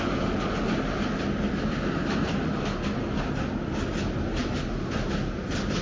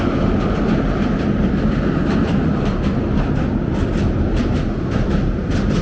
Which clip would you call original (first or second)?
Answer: first